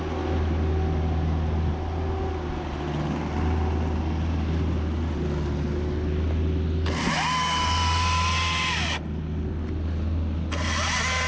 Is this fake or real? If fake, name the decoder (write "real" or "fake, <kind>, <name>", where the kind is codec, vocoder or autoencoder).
real